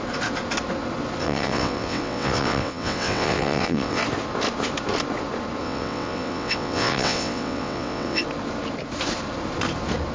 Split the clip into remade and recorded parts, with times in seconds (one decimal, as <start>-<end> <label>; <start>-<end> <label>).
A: 0.0-1.2 recorded; 1.2-4.0 remade; 4.0-5.6 recorded; 5.6-8.2 remade; 8.2-10.1 recorded